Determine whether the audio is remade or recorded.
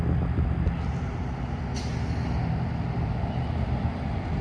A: recorded